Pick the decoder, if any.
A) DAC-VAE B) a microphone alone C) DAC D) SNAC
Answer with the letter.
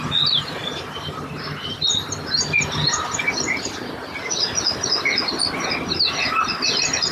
B